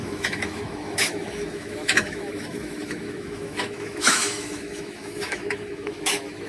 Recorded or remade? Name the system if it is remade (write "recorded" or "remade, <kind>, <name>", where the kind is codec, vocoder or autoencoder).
remade, autoencoder, DAC-VAE